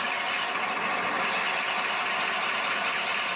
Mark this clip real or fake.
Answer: real